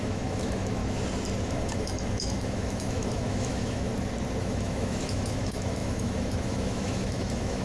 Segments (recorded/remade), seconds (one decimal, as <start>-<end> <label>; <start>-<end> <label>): 0.0-0.8 remade; 0.8-1.4 recorded; 1.4-3.9 remade; 3.9-4.4 recorded; 4.4-7.6 remade